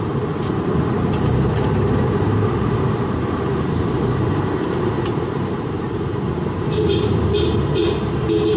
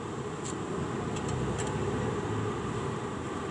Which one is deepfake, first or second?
first